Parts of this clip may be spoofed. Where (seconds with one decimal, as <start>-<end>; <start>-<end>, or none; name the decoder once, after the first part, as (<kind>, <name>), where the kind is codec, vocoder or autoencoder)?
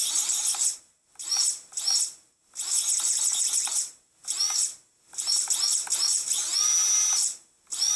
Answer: none